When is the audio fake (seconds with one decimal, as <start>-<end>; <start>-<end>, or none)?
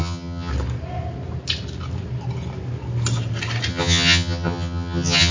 0.0-0.5; 3.7-5.3